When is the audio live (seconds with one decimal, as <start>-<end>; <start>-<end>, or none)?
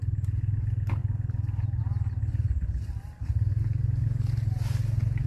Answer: 0.0-5.3